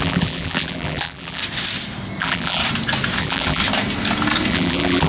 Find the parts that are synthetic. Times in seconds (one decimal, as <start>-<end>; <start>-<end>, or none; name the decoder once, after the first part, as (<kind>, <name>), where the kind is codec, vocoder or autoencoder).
0.0-1.4 (vocoder, BigVGAN v2); 2.2-2.6; 3.2-3.6; 4.5-5.1